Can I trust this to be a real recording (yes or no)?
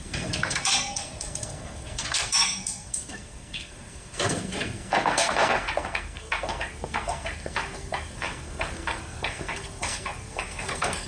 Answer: no